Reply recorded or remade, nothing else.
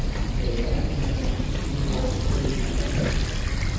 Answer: recorded